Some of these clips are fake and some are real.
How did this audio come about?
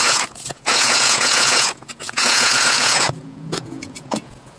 fake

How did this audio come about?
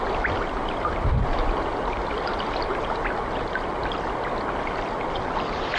real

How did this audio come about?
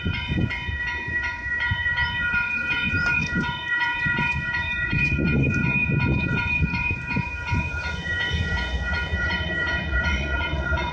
fake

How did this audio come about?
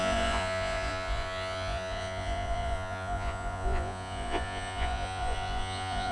fake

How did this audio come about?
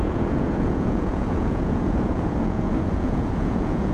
fake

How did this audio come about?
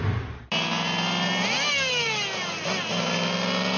real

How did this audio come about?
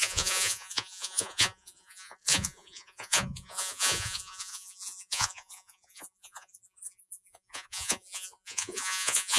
fake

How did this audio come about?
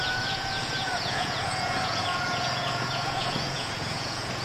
fake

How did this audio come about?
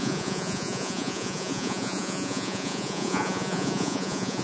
fake